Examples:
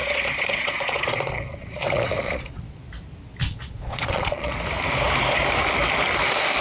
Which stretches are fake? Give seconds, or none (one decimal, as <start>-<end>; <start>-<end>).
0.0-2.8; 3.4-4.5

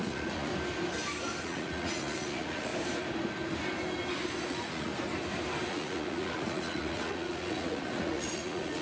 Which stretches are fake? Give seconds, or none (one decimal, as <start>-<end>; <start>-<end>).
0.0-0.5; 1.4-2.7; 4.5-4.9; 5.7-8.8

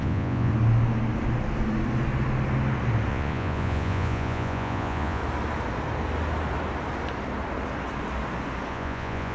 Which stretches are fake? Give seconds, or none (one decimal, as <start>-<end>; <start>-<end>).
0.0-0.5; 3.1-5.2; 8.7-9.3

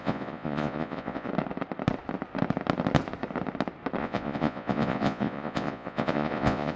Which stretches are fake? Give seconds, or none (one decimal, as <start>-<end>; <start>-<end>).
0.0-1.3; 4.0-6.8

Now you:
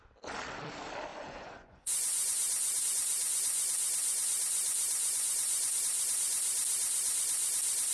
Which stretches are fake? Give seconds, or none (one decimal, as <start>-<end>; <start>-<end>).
1.1-5.8